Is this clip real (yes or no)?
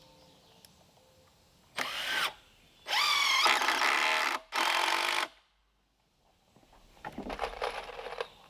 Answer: yes